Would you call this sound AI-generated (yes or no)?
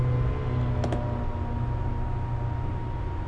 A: no